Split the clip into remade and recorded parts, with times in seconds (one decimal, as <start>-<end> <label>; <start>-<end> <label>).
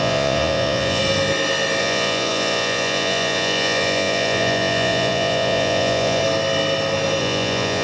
0.0-1.0 remade; 1.0-1.8 recorded; 1.8-6.2 remade; 6.2-7.2 recorded; 7.2-7.8 remade